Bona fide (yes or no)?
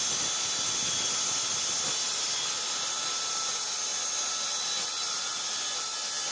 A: yes